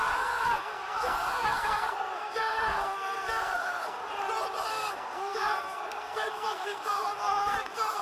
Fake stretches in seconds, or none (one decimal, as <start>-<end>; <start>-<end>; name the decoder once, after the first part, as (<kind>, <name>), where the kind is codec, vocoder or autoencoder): 0.0-4.0 (codec, SNAC); 4.7-8.0